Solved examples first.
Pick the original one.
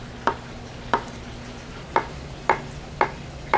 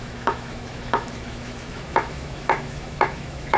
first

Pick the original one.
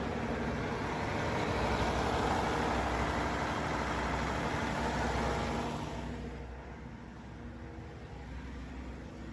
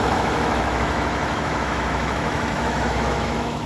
first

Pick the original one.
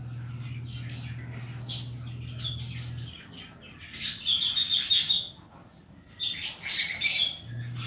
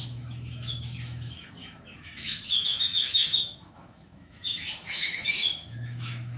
first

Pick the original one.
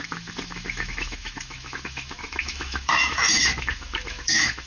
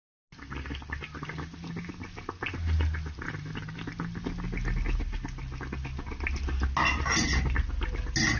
second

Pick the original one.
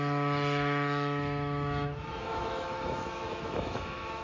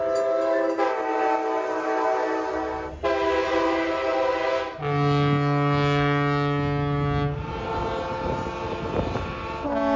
second